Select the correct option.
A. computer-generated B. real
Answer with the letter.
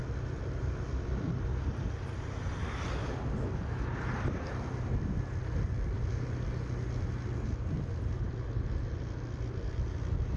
B